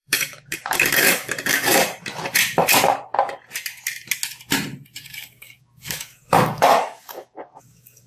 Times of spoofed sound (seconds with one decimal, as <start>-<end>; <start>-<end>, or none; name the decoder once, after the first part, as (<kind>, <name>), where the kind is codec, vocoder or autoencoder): 0.0-1.8 (codec, DAC); 5.0-8.1